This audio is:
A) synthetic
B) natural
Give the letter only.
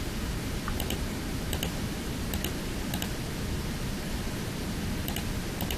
B